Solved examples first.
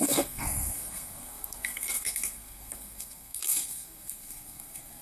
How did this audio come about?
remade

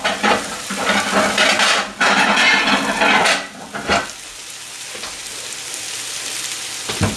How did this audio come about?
recorded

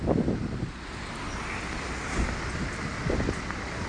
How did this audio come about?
recorded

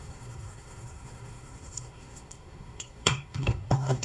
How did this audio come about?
remade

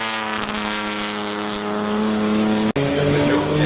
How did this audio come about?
recorded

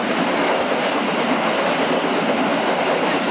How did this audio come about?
recorded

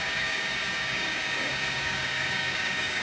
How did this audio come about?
remade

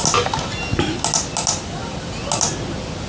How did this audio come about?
recorded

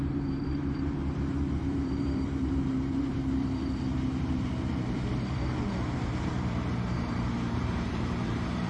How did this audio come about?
remade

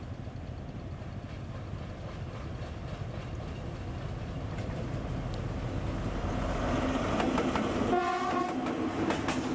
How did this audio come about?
recorded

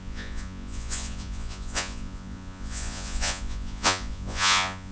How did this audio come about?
remade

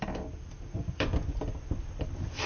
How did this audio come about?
remade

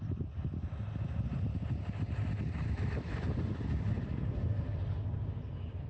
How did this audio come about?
recorded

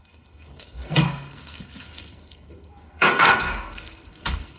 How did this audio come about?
remade